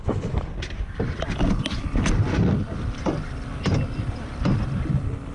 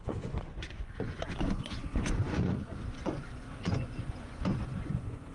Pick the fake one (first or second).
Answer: second